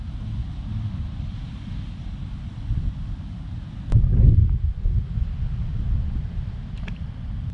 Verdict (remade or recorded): recorded